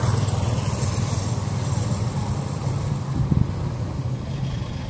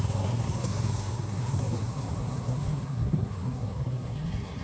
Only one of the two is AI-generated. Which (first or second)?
second